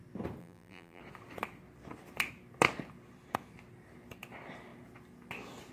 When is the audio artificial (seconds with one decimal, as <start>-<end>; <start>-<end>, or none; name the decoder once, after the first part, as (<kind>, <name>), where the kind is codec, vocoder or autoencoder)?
0.4-1.0 (vocoder, BigVGAN v2)